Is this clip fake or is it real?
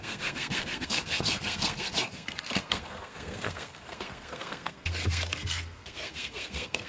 fake